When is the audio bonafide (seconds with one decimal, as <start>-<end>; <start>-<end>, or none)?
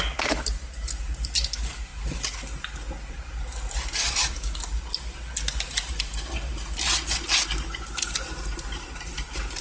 0.0-9.6